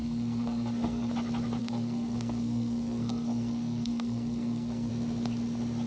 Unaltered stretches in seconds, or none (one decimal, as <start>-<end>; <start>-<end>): 1.1-1.6; 4.9-5.9